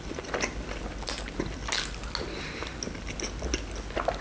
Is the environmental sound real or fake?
real